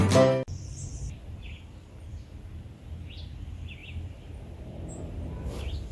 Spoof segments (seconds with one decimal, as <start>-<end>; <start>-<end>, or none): none